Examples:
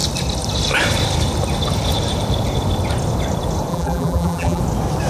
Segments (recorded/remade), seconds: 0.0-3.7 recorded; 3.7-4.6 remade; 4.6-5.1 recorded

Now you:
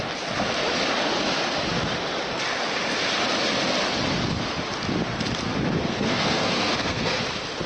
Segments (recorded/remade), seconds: 0.0-5.9 recorded; 5.9-7.2 remade; 7.2-7.7 recorded

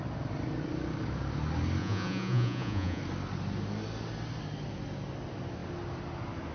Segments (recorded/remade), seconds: 0.0-1.8 recorded; 1.8-3.0 remade; 3.0-6.5 recorded

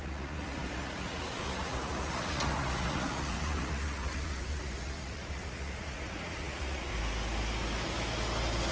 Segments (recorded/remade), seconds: 0.0-6.9 remade; 6.9-8.7 recorded

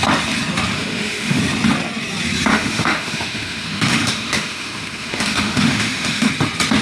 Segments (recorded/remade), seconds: 0.0-0.7 recorded; 0.7-1.4 remade; 1.4-2.5 recorded; 2.5-6.3 remade; 6.3-6.8 recorded